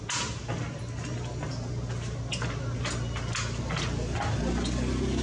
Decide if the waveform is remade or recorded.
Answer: recorded